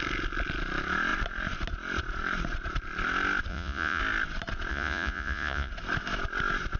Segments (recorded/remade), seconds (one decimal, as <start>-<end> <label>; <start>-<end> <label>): 0.0-3.5 recorded; 3.5-4.0 remade; 4.0-4.7 recorded; 4.7-5.7 remade; 5.7-6.8 recorded